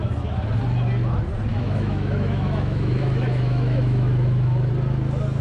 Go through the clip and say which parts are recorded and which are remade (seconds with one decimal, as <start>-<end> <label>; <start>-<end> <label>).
0.0-1.5 recorded; 1.5-4.7 remade; 4.7-5.4 recorded